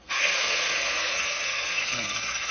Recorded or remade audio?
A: remade